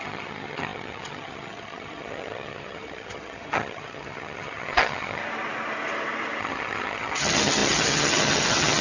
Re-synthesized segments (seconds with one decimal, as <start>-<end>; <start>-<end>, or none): 0.0-5.2; 6.4-8.8